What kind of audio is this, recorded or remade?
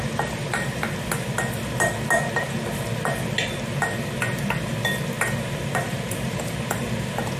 recorded